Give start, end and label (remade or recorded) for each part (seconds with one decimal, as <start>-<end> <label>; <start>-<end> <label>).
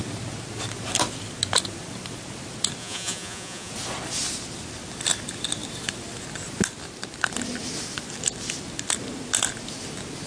0.0-2.8 recorded; 2.8-3.7 remade; 3.7-10.3 recorded